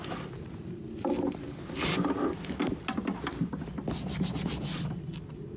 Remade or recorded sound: recorded